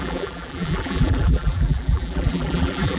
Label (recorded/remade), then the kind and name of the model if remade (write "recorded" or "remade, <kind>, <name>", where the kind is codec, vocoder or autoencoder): remade, vocoder, BigVGAN v2